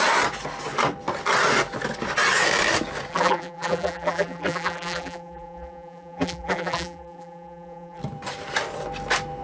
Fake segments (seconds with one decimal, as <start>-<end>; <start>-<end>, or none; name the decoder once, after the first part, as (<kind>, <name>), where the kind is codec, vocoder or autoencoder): 3.1-8.0 (vocoder, BigVGAN v2)